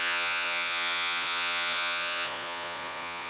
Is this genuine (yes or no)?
no